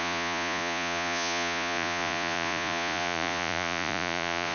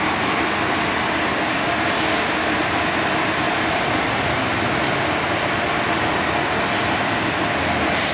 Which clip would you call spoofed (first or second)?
first